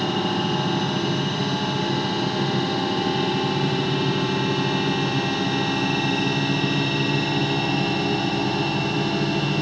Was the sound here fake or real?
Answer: real